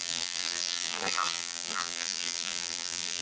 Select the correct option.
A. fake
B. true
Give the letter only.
A